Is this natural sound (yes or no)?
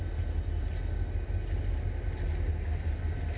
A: yes